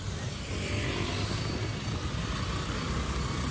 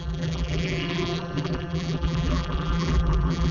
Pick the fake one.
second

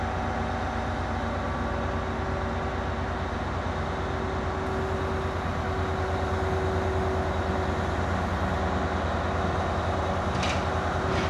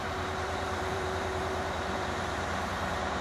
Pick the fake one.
second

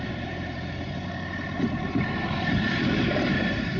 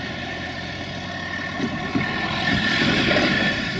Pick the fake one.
first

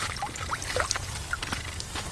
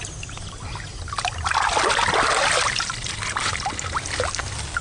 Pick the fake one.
first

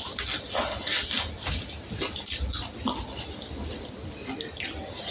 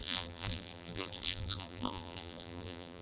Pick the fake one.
second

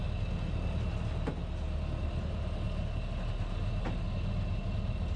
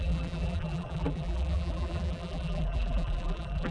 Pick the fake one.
second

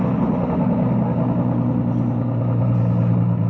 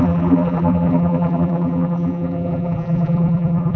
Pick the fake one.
second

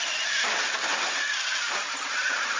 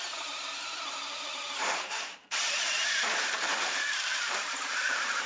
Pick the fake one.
second